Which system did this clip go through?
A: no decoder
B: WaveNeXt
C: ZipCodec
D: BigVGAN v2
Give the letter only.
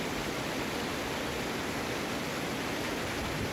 A